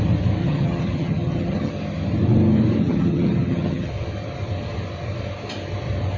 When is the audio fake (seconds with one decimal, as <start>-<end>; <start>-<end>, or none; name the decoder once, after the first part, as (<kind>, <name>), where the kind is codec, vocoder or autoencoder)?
0.4-1.7 (vocoder, HiFi-GAN); 2.8-3.9